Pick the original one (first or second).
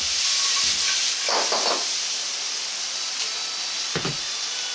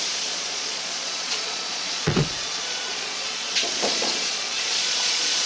first